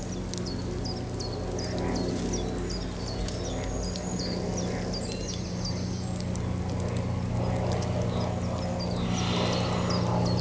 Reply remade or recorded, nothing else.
recorded